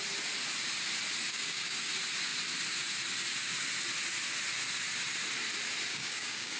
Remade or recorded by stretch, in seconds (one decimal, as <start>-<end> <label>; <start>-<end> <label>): 0.0-1.3 recorded; 1.3-1.9 remade; 1.9-5.9 recorded; 5.9-6.6 remade